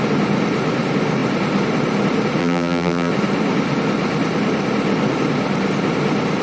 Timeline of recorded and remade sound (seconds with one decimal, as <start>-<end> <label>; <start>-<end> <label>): 0.0-2.4 recorded; 2.4-3.1 remade; 3.1-6.4 recorded